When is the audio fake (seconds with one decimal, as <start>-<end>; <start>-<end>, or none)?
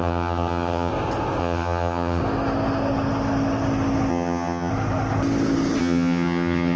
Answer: 0.0-0.9; 1.4-2.2; 4.1-4.7; 5.8-6.8